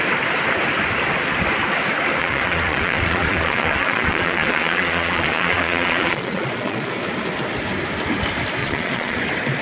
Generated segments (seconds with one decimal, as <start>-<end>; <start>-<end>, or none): 2.2-6.9; 8.6-9.2